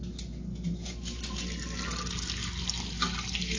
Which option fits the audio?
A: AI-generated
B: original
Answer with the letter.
B